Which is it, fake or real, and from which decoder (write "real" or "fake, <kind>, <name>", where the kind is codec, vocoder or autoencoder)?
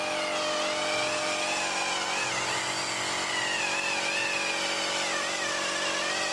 real